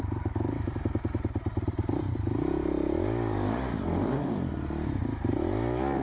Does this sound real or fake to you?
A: real